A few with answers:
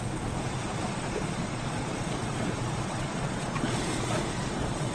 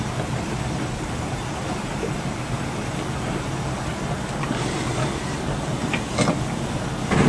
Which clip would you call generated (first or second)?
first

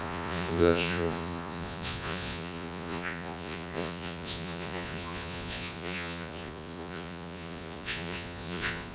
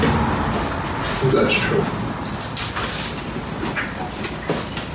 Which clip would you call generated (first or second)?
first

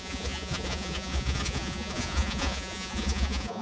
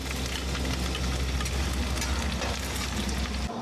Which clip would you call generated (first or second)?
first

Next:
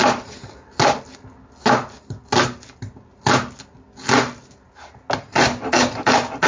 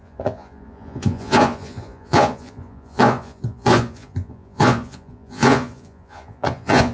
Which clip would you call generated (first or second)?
second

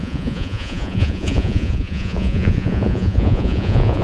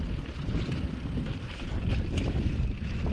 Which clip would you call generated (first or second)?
first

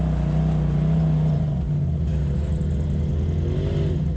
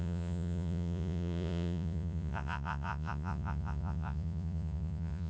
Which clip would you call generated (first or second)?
second